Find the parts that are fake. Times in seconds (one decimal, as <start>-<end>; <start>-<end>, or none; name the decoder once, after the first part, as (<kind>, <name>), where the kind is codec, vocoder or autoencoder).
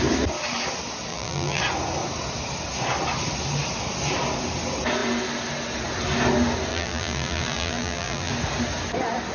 1.1-1.6 (vocoder, BigVGAN v2); 6.7-8.3